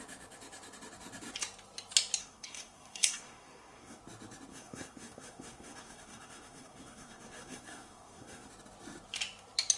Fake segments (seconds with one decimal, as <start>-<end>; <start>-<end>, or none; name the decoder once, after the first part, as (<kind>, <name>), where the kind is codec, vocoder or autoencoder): 2.2-4.0 (codec, SNAC); 4.5-8.5